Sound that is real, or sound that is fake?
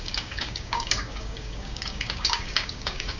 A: fake